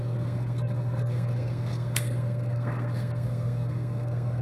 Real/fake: fake